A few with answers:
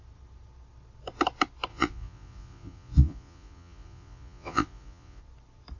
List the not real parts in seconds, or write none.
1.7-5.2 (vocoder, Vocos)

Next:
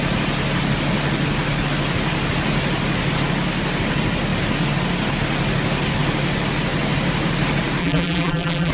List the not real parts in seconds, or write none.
7.8-8.7 (vocoder, BigVGAN v2)

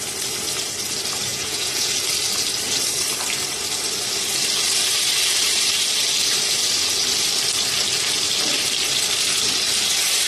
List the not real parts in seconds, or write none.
1.3-1.9 (vocoder, Vocos)